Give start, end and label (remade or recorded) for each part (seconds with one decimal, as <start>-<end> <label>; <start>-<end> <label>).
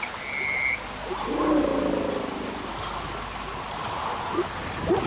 0.0-5.1 recorded